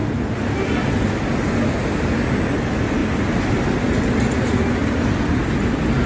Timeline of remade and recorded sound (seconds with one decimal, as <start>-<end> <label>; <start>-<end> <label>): 0.0-6.1 recorded